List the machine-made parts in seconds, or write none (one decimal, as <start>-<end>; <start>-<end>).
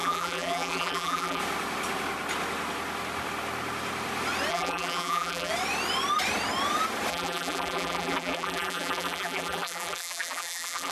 0.0-1.4; 4.5-5.5; 7.1-10.9